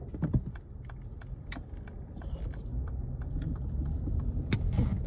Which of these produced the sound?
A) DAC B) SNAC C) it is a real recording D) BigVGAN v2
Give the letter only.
D